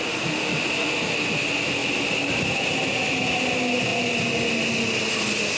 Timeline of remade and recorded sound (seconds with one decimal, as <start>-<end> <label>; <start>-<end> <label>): 0.0-1.8 recorded; 1.8-2.8 remade; 2.8-5.6 recorded